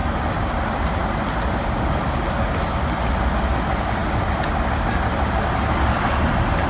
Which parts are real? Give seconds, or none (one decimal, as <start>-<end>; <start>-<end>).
0.0-6.7